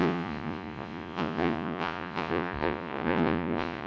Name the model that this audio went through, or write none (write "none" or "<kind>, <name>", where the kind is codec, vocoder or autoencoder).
vocoder, Vocos